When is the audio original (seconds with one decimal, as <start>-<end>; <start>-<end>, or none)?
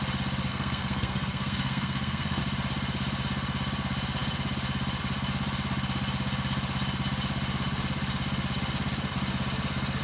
0.0-0.5; 2.4-10.0